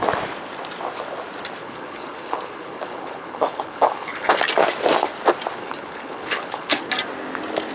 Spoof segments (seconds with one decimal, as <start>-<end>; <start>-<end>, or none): 1.6-4.4; 5.6-6.9